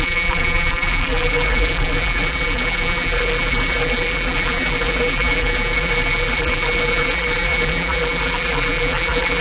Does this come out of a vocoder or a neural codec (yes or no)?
yes